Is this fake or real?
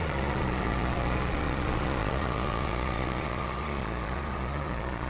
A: fake